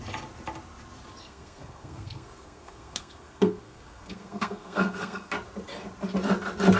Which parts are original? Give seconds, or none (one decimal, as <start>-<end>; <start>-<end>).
0.0-1.2; 5.3-6.8